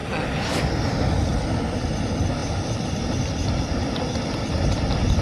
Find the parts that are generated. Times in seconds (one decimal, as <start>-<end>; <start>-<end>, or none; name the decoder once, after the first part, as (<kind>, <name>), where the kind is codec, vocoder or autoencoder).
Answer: none